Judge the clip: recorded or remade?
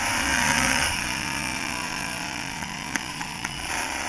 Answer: remade